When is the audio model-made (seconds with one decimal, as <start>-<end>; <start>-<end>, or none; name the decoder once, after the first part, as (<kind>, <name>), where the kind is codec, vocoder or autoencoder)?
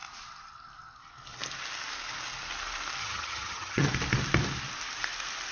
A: 3.0-3.9 (vocoder, HiFi-GAN)